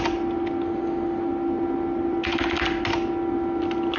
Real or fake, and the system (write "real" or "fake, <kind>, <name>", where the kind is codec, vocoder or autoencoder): real